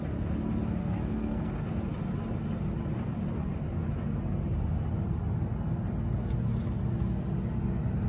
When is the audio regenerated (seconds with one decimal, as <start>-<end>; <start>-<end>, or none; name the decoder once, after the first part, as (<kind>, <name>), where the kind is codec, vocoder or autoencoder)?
0.8-1.5 (codec, SNAC)